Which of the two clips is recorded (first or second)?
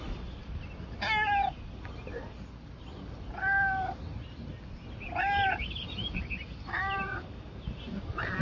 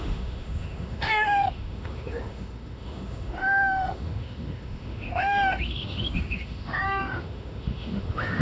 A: first